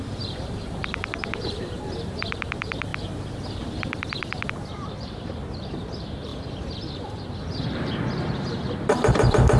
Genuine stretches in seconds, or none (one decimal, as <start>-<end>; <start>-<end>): 2.9-4.5